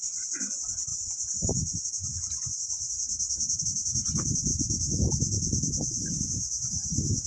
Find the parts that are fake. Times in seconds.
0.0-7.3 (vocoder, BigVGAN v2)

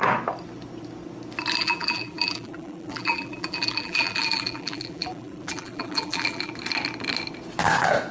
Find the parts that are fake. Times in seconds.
1.6-6.5 (vocoder, BigVGAN v2)

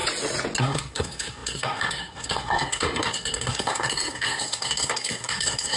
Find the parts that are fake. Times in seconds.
0.6-5.8 (codec, SNAC)